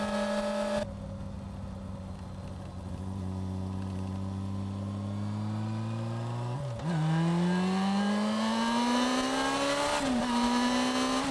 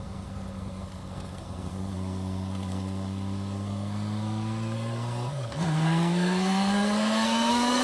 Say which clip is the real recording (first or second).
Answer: first